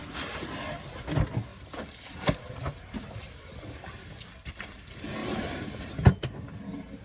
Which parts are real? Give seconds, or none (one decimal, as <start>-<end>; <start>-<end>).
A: 0.0-1.5; 3.3-5.2; 5.9-7.0